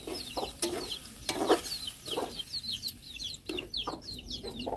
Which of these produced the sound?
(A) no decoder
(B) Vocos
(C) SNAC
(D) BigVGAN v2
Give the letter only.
A